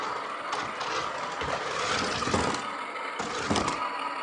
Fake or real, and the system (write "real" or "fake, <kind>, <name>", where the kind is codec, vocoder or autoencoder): real